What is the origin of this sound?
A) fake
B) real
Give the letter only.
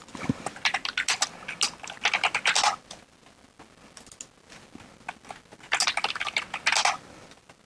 B